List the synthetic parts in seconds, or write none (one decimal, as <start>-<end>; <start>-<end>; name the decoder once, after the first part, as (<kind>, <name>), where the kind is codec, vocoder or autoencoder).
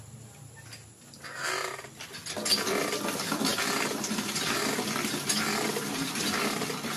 none